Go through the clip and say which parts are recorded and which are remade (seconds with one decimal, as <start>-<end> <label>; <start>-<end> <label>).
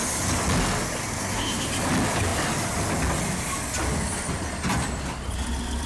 0.0-1.2 recorded; 1.2-1.7 remade; 1.7-5.9 recorded